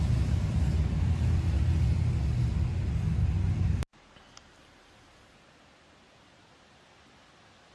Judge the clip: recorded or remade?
recorded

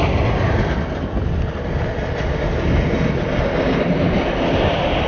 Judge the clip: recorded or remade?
recorded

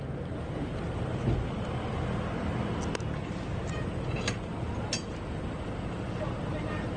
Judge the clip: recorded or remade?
recorded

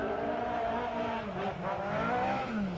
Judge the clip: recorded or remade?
remade